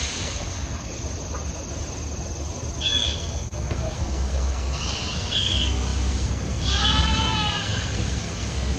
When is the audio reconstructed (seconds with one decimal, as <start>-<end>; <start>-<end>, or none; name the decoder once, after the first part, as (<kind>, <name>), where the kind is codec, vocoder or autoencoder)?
0.0-0.9 (codec, SNAC); 2.8-8.8